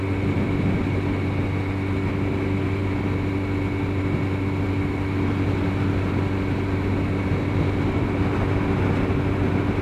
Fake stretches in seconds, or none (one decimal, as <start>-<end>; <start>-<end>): none